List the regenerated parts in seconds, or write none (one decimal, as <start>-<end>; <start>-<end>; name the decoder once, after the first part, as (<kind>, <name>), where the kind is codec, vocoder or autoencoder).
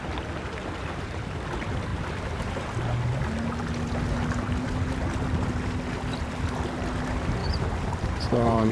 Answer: 1.9-3.2 (vocoder, BigVGAN v2); 7.4-8.7